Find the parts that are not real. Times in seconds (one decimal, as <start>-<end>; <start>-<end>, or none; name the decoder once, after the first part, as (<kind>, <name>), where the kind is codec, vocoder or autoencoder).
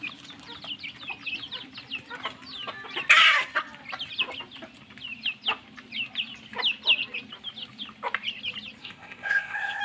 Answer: 8.8-9.8 (codec, ZipCodec)